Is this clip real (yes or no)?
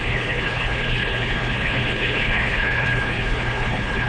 no